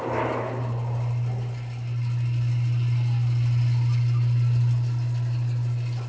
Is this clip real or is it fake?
real